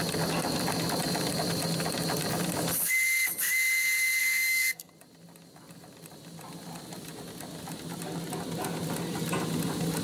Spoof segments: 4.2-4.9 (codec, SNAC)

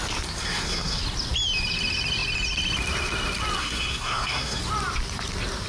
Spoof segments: 0.4-1.0 (codec, SNAC); 3.6-4.6